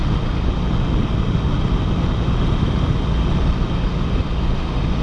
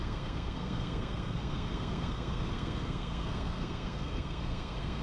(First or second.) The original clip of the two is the first